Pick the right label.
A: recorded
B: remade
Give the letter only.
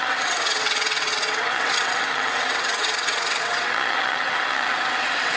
B